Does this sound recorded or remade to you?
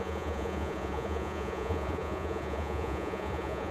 remade